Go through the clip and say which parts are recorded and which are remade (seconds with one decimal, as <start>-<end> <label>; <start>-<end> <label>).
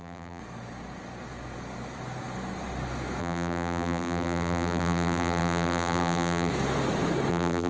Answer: 0.0-0.4 remade; 0.4-3.2 recorded; 3.2-6.5 remade; 6.5-7.3 recorded; 7.3-7.7 remade